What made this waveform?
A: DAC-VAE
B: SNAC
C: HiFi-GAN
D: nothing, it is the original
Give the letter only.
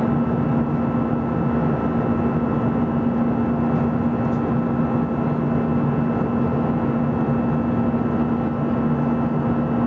D